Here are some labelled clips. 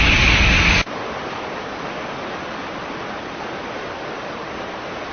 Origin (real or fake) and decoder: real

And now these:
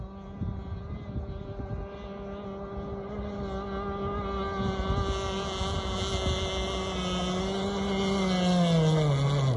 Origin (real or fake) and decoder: real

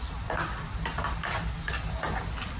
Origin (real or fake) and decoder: real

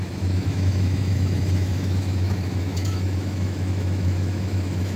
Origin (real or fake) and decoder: fake, autoencoder, DAC-VAE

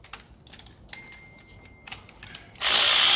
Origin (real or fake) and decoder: real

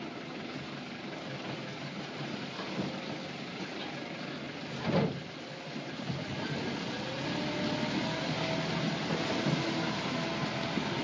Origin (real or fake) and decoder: real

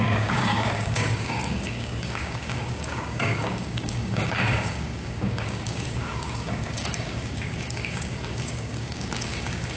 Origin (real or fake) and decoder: fake, codec, DAC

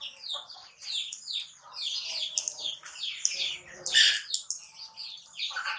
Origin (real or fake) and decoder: real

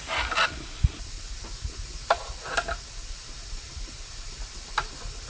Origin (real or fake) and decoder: real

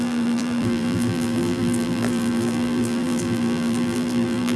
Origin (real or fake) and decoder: fake, vocoder, BigVGAN v2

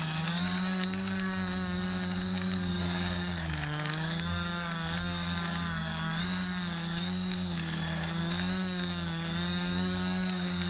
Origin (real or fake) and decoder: fake, codec, DAC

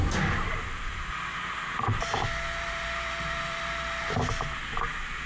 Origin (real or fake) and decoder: real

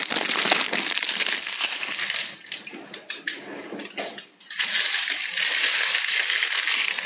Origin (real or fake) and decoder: real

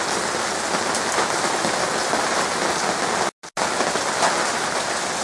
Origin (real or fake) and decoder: real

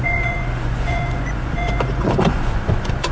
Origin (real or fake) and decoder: fake, vocoder, Vocos